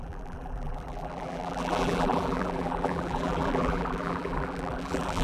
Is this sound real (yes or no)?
no